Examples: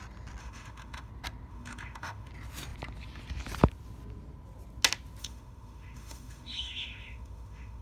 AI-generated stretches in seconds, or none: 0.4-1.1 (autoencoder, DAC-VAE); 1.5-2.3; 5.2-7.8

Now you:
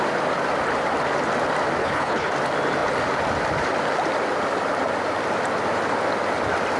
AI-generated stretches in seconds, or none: 1.8-2.3 (codec, HILCodec)